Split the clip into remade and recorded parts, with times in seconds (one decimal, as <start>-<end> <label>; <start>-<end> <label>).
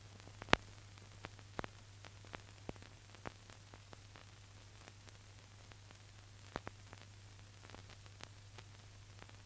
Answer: 0.0-9.5 recorded